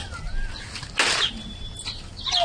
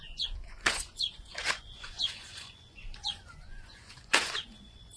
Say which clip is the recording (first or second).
first